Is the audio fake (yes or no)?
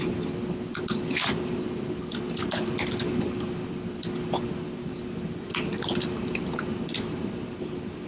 no